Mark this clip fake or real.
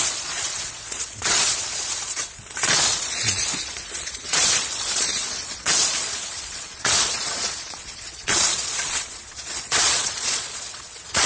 fake